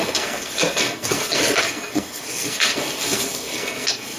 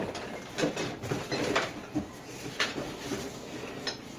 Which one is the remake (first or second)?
first